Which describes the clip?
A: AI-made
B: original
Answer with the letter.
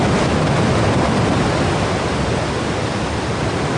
B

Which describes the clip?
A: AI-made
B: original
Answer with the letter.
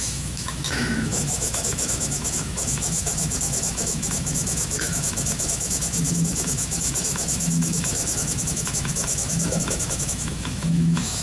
A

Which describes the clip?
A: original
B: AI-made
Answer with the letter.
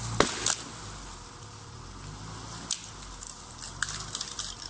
A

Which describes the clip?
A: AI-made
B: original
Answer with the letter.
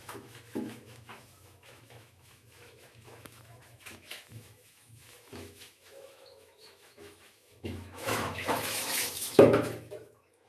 A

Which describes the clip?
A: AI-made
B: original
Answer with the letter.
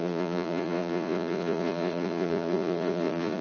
A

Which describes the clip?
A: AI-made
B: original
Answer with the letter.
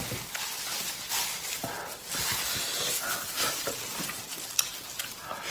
A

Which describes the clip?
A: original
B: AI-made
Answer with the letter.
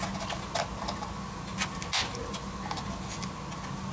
A